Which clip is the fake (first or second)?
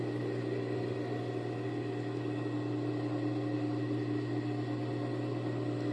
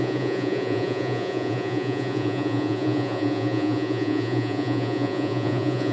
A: second